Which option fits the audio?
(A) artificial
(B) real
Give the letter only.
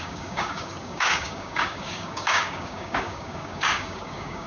A